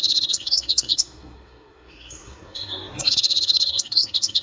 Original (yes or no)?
no